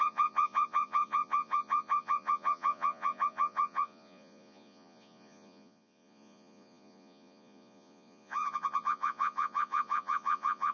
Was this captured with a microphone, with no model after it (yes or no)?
no